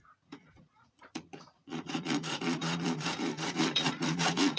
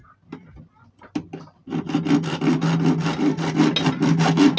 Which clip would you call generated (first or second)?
first